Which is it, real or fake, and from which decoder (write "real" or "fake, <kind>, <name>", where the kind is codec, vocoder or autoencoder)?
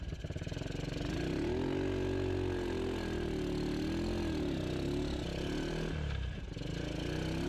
real